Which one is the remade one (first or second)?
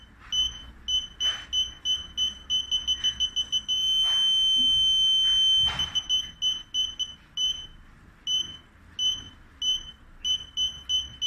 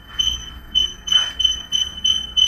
second